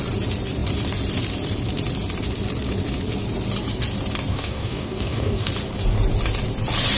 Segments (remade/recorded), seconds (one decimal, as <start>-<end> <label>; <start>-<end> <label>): 0.0-4.3 recorded; 4.3-5.5 remade; 5.5-7.0 recorded